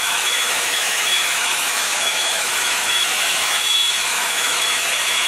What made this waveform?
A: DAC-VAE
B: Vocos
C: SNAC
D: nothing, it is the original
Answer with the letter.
A